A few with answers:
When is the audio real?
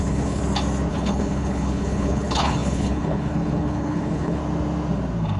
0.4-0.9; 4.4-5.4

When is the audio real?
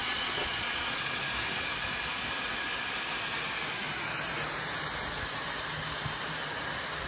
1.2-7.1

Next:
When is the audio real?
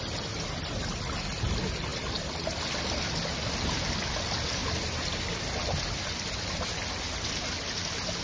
0.0-8.2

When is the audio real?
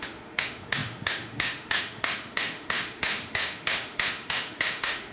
none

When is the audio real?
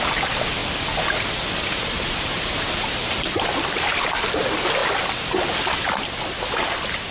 0.0-0.6; 4.1-7.1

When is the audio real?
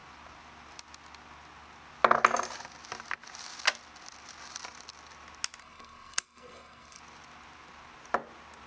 0.0-5.6; 7.0-8.7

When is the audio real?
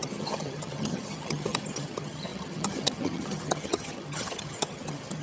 none